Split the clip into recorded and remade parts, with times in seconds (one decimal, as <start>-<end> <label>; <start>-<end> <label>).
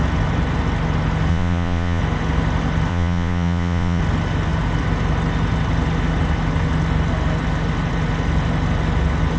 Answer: 0.0-1.3 recorded; 1.3-2.0 remade; 2.0-2.9 recorded; 2.9-4.0 remade; 4.0-9.4 recorded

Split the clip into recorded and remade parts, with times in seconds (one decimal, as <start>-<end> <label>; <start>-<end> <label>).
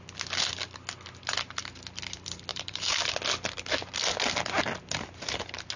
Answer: 0.0-2.5 recorded; 2.5-3.1 remade; 3.1-5.8 recorded